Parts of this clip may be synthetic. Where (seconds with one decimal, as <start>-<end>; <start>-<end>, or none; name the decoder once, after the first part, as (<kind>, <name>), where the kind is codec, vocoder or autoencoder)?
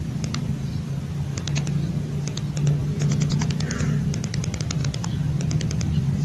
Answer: 2.8-3.5 (vocoder, Vocos)